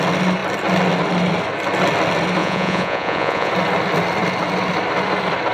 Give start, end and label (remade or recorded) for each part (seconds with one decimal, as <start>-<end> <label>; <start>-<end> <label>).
0.0-2.4 recorded; 2.4-3.5 remade; 3.5-5.5 recorded